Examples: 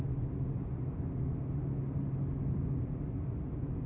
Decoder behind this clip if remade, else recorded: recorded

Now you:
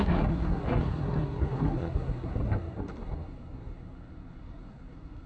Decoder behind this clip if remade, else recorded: remade, codec, SNAC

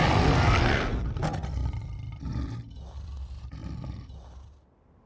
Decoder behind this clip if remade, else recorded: recorded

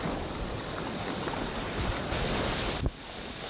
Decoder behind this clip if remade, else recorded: recorded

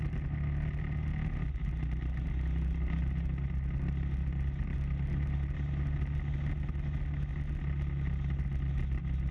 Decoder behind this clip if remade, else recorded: recorded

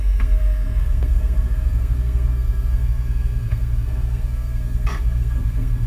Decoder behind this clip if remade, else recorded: remade, codec, SNAC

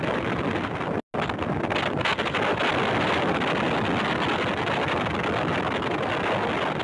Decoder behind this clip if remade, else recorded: recorded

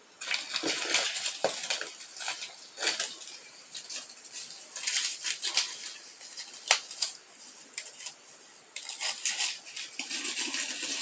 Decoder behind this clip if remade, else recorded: recorded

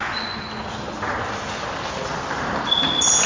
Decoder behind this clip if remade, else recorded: recorded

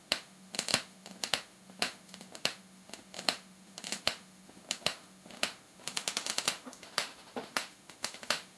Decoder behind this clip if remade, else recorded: remade, autoencoder, DAC-VAE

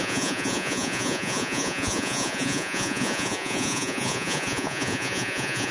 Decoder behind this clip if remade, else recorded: remade, vocoder, Vocos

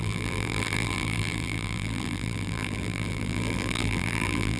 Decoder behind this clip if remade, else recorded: remade, vocoder, BigVGAN v2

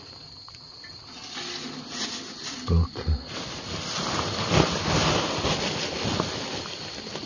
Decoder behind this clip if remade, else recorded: recorded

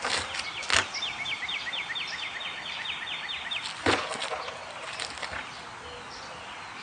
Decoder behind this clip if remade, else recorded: recorded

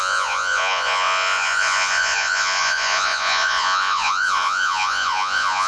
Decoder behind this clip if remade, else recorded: remade, vocoder, Vocos